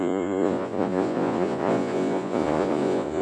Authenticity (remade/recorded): remade